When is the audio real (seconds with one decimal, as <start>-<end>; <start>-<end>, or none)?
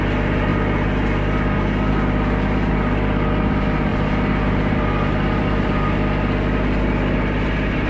0.0-7.9